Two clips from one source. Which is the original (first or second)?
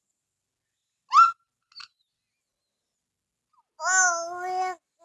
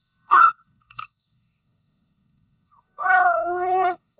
first